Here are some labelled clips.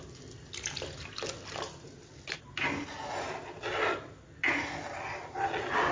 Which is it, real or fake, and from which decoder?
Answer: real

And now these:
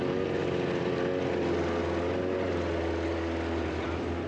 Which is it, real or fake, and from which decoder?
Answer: real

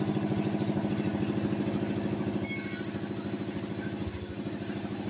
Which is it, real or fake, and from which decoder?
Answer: real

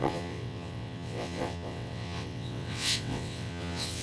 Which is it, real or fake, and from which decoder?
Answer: fake, vocoder, WaveNeXt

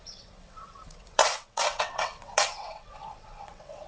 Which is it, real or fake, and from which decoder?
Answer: fake, vocoder, WaveNeXt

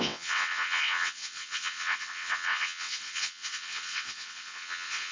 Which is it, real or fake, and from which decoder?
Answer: fake, vocoder, WaveNeXt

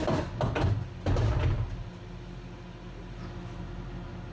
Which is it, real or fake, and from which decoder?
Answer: real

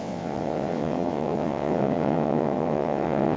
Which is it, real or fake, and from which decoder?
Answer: fake, vocoder, WaveNeXt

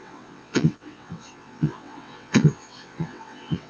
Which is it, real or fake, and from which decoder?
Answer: fake, vocoder, WaveNeXt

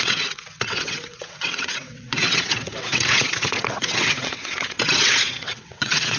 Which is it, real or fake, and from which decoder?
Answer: fake, vocoder, WaveNeXt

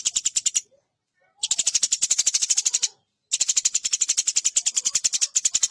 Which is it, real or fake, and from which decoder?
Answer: real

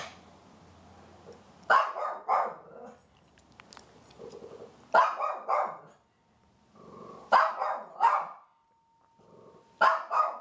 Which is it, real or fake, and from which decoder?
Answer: real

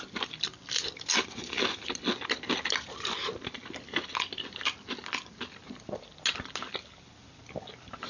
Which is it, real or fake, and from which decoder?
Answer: real